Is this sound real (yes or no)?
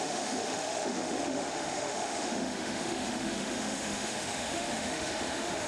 no